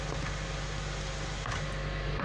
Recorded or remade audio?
recorded